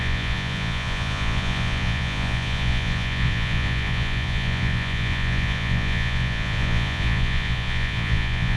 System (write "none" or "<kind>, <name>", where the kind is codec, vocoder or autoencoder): vocoder, Vocos